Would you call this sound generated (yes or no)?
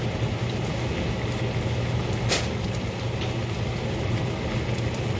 no